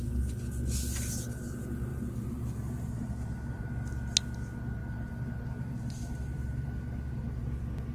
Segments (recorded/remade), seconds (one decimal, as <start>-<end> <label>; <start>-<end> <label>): 0.0-1.9 recorded; 1.9-3.7 remade; 3.7-4.8 recorded; 4.8-7.4 remade; 7.4-7.9 recorded